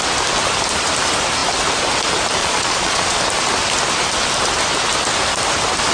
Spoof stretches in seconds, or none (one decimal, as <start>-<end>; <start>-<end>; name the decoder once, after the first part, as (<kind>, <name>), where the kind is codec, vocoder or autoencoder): 2.4-3.2 (vocoder, Vocos)